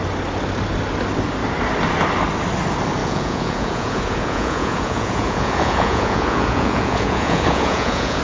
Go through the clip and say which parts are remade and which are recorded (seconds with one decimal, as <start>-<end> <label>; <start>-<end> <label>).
0.0-3.0 recorded; 3.0-8.2 remade